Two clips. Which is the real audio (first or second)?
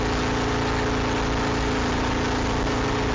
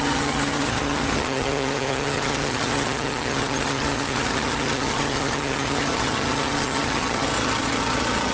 first